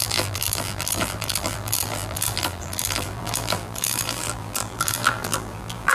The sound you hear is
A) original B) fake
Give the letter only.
B